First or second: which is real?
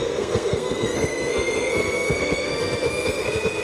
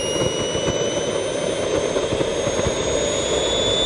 second